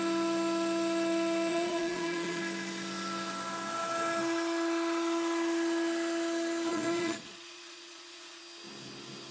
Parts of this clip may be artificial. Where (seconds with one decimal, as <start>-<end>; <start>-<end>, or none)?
1.5-2.4; 6.7-8.4